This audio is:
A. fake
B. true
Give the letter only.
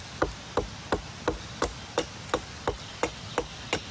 B